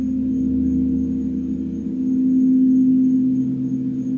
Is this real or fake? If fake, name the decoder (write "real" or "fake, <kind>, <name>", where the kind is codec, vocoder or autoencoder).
real